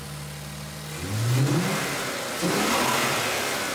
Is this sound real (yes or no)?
yes